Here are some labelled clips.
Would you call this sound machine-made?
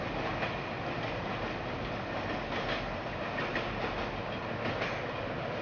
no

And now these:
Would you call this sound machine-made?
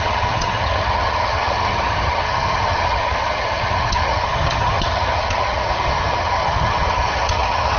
yes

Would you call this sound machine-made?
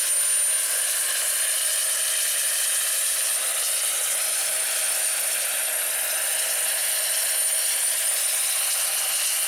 no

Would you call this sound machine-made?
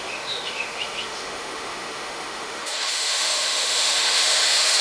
yes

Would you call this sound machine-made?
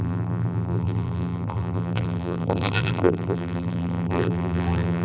yes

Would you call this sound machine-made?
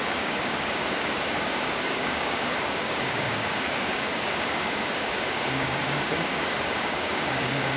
yes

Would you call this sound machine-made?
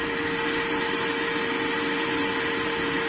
no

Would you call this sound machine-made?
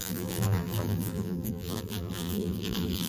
yes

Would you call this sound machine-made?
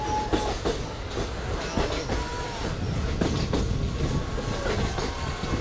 no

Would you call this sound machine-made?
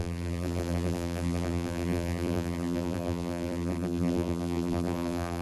yes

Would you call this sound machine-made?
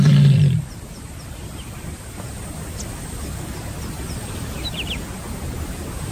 no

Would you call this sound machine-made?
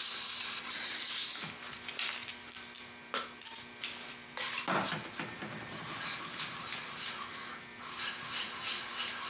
no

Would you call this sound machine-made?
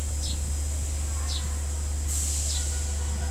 no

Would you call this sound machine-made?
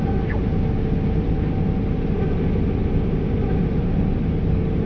no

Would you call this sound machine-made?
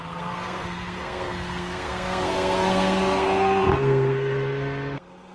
yes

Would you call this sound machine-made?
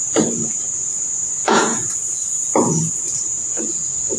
yes